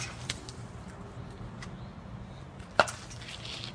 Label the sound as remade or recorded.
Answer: recorded